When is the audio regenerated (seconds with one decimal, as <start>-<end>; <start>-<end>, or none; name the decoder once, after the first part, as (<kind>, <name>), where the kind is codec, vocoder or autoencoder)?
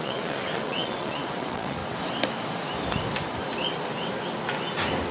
0.0-1.8 (vocoder, WaveNeXt)